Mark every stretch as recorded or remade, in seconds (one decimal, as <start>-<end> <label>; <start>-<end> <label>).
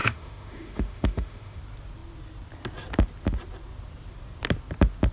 0.0-1.6 remade; 1.6-5.1 recorded